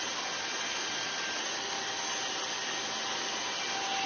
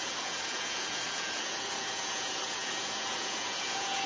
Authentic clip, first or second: first